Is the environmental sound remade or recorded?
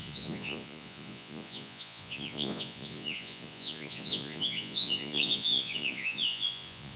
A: remade